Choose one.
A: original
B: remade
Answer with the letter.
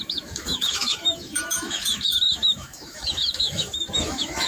B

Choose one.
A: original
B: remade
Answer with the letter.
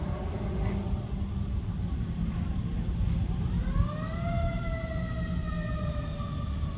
A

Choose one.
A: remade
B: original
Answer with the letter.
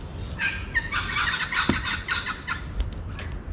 B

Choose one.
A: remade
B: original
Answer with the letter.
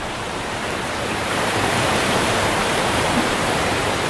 A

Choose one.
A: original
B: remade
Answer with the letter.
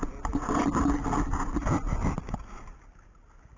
A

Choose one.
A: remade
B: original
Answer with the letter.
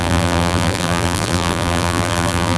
A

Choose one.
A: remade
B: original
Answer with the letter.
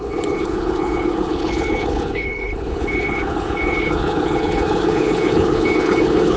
A